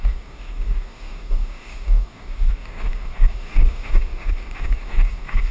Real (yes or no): no